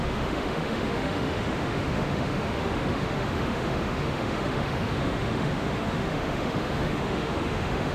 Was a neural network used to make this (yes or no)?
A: yes